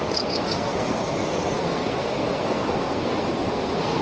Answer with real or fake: fake